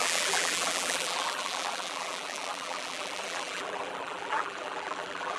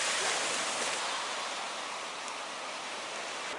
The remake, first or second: first